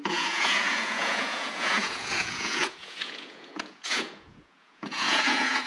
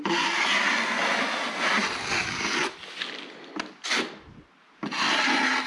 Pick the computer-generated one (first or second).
first